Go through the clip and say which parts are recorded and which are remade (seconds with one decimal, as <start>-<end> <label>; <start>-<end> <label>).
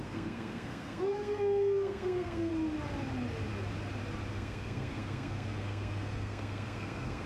0.0-2.5 remade; 2.5-4.3 recorded; 4.3-7.3 remade